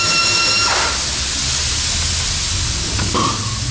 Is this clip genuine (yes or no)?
yes